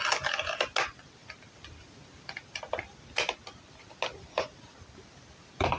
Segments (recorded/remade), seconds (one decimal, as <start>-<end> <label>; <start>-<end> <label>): 0.0-5.8 recorded